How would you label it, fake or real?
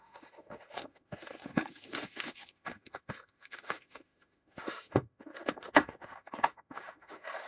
fake